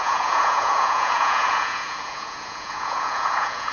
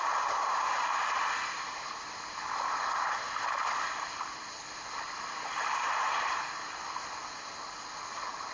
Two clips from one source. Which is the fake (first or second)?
first